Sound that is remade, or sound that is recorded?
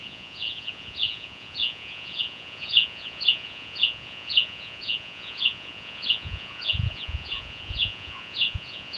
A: remade